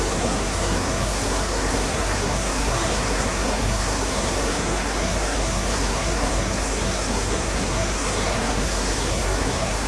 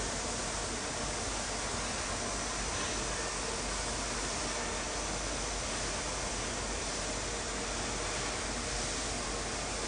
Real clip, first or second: second